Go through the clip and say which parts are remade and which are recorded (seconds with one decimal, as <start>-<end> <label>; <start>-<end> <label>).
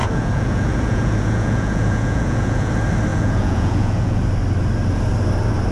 0.0-2.7 remade; 2.7-3.1 recorded; 3.1-4.2 remade; 4.2-5.7 recorded